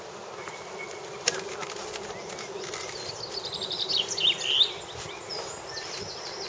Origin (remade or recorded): recorded